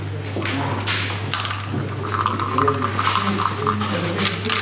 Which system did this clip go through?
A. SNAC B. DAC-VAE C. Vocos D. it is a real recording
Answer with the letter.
D